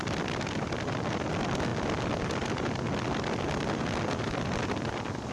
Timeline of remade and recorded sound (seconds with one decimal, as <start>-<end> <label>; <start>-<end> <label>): 0.0-5.3 recorded